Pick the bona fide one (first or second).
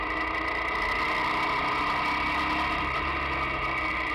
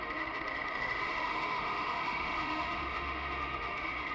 first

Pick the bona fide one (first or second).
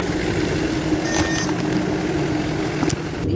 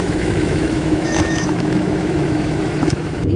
first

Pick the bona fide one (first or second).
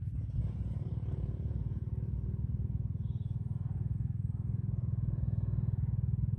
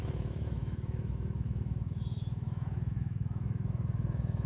first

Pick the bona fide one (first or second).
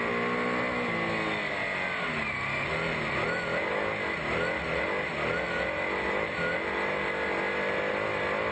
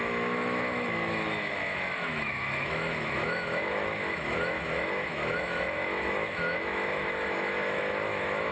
first